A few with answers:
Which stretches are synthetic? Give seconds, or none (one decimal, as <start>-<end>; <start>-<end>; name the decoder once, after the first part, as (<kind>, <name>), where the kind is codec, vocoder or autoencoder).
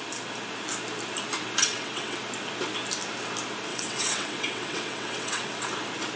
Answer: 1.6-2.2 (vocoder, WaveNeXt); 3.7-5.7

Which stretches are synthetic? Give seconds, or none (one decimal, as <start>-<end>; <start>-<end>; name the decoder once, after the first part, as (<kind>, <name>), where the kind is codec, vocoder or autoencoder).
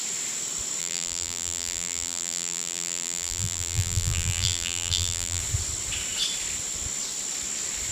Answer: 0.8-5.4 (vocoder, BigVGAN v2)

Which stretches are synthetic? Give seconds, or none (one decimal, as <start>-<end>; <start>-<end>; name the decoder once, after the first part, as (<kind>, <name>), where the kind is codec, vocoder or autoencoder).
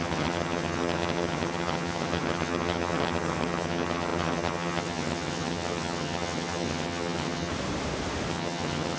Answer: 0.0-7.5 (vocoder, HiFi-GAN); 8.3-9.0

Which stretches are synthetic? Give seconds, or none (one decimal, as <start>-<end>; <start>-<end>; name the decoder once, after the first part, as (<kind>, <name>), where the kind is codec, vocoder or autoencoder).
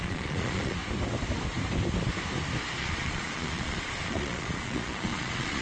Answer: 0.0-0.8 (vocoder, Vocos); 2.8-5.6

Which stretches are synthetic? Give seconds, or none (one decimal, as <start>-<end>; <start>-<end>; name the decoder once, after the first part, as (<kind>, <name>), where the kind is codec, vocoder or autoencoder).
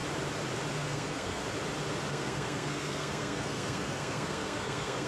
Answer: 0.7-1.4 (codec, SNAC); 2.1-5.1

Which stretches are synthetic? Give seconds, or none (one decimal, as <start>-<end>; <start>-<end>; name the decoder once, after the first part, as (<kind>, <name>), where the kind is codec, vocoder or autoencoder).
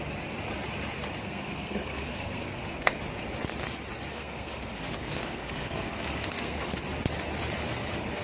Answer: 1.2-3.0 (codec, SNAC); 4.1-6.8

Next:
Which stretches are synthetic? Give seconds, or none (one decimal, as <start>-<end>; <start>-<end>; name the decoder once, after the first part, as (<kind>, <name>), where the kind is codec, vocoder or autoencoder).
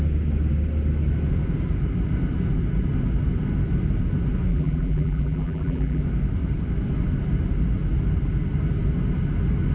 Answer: 4.5-6.0 (vocoder, BigVGAN v2)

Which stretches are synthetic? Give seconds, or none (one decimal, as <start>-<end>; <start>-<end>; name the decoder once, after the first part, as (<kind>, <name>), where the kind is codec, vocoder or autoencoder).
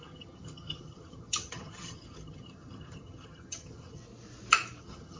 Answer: 0.0-4.0 (vocoder, HiFi-GAN); 4.8-5.2